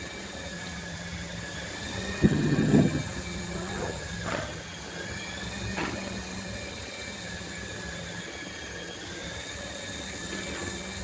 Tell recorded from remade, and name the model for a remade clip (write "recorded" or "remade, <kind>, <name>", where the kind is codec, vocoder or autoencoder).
remade, vocoder, HiFi-GAN